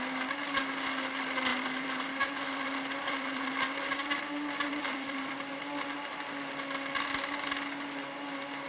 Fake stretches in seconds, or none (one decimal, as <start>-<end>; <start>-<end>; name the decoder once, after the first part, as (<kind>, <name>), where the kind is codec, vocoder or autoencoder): 1.5-3.5 (vocoder, BigVGAN v2); 4.7-5.6